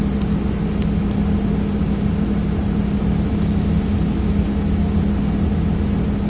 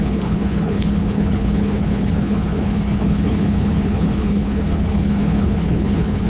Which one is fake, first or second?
second